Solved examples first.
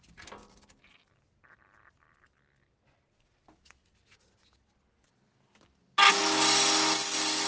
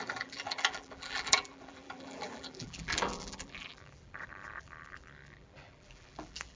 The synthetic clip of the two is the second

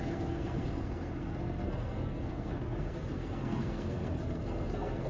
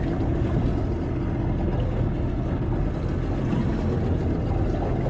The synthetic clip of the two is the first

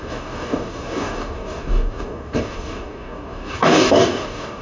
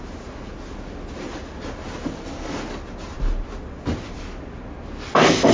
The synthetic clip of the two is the first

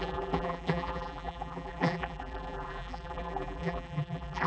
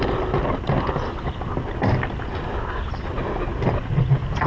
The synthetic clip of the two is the first